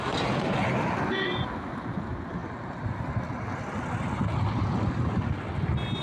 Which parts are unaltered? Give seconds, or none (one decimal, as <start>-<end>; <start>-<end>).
0.0-6.0